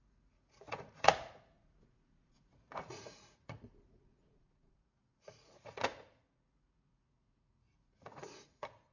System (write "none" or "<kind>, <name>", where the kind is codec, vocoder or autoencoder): vocoder, Vocos